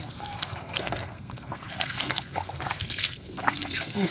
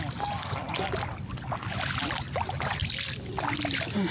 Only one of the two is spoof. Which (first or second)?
first